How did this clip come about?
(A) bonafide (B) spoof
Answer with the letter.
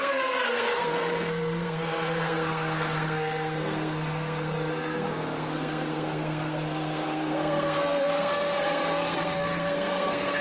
B